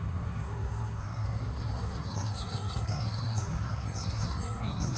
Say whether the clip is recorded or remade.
remade